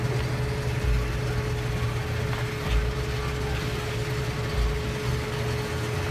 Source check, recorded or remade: recorded